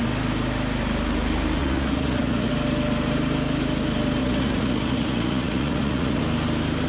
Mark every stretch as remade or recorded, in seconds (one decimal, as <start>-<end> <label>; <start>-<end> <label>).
0.0-1.6 recorded; 1.6-2.5 remade; 2.5-4.2 recorded; 4.2-6.2 remade; 6.2-6.9 recorded